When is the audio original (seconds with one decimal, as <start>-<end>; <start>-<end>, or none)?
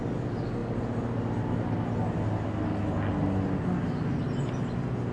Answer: 0.0-5.1